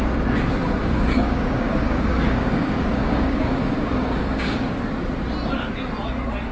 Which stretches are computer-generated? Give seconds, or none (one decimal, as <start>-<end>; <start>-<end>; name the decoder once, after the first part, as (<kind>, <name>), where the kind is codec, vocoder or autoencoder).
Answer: 0.8-4.7 (codec, DAC)